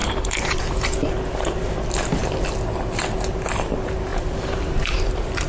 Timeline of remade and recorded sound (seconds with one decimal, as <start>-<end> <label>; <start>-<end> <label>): 0.0-1.1 remade; 1.1-4.1 recorded; 4.1-5.5 remade